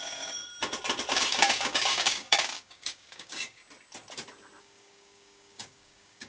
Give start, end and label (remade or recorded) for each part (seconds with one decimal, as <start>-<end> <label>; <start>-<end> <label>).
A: 0.0-0.5 remade; 0.5-1.1 recorded; 1.1-3.6 remade; 3.6-4.6 recorded; 4.6-6.3 remade